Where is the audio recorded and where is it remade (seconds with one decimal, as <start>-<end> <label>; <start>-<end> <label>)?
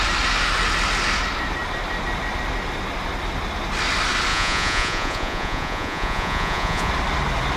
0.0-4.3 recorded; 4.3-6.9 remade; 6.9-7.6 recorded